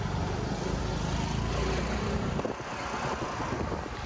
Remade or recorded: recorded